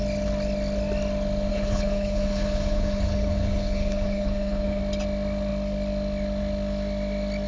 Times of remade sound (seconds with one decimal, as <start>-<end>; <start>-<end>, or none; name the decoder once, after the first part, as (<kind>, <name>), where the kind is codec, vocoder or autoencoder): 1.5-4.8 (codec, HILCodec)